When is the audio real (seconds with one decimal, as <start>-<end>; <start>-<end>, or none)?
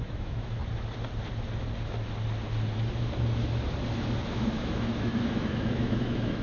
0.6-4.3